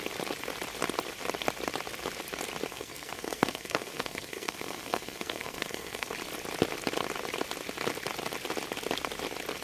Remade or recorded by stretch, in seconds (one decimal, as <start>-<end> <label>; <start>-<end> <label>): 0.0-2.7 recorded; 2.7-6.1 remade; 6.1-9.6 recorded